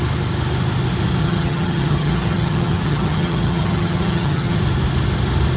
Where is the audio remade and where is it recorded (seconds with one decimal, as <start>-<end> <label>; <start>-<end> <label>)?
0.0-1.2 recorded; 1.2-4.6 remade; 4.6-5.6 recorded